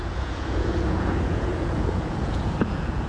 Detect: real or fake fake